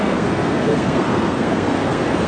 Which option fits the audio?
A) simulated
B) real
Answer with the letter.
A